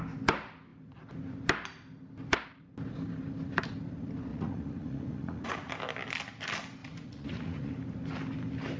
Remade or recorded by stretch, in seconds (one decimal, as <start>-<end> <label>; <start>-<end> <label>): 0.0-4.3 recorded; 4.3-5.7 remade; 5.7-6.8 recorded; 6.8-7.7 remade; 7.7-8.8 recorded